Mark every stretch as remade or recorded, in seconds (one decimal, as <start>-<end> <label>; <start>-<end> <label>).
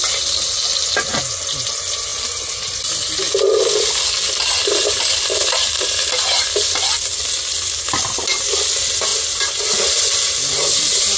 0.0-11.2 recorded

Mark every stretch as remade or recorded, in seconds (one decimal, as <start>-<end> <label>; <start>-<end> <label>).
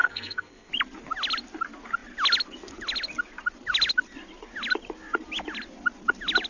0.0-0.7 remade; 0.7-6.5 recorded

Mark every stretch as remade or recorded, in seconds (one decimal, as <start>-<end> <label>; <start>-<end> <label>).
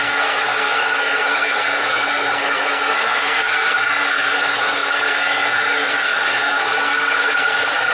0.0-7.9 remade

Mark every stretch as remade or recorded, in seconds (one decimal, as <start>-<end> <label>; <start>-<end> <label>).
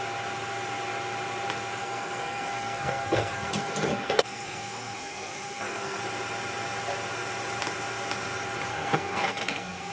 0.0-1.8 recorded; 1.8-6.0 remade; 6.0-8.7 recorded; 8.7-9.9 remade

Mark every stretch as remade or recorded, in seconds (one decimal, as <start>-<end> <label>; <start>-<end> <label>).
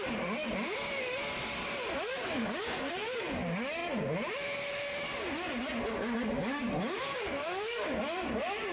0.0-2.1 recorded; 2.1-2.9 remade; 2.9-6.3 recorded; 6.3-8.0 remade; 8.0-8.7 recorded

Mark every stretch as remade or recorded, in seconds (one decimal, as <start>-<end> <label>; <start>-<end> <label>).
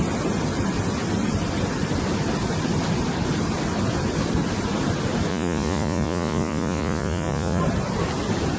0.0-5.3 recorded; 5.3-7.6 remade; 7.6-8.6 recorded